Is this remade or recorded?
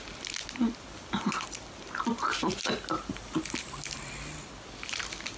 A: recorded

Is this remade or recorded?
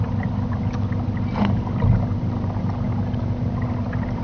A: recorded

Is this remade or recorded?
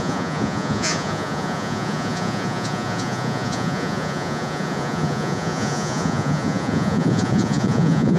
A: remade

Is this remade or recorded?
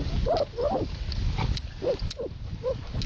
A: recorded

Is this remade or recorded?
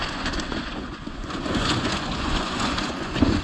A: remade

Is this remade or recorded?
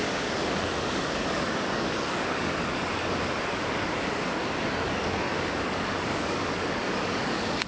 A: remade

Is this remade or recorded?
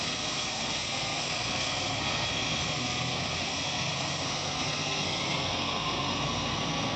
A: remade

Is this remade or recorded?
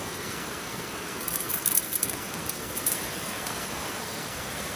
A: remade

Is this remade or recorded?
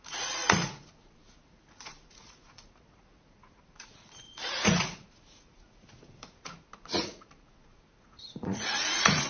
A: remade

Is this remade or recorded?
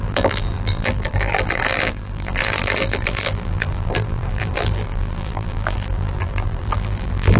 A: remade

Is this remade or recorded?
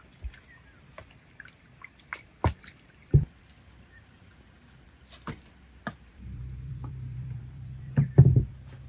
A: remade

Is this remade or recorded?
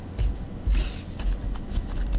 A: recorded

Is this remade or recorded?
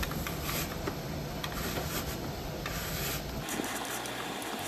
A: recorded